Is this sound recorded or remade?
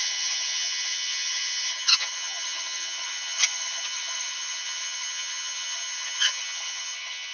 remade